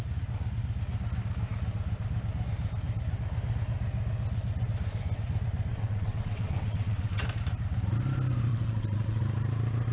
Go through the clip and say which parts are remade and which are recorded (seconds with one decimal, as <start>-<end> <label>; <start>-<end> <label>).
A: 0.0-5.7 recorded; 5.7-7.2 remade; 7.2-8.5 recorded; 8.5-9.2 remade; 9.2-9.9 recorded